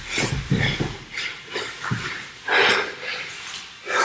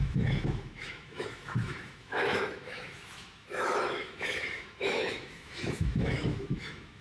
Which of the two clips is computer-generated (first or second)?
second